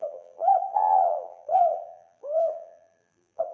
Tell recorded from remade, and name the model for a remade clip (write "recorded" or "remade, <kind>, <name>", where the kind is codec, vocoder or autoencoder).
remade, vocoder, BigVGAN v2